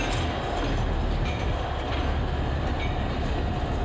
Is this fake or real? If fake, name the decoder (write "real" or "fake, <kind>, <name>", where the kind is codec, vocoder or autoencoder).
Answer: real